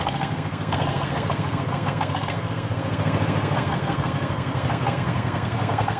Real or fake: fake